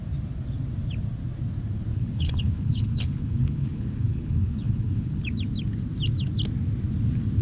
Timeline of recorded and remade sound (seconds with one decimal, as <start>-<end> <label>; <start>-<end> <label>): 0.0-1.9 recorded; 1.9-5.2 remade; 5.2-7.4 recorded